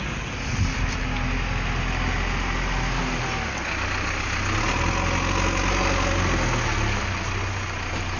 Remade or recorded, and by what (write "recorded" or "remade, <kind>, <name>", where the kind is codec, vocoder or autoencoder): recorded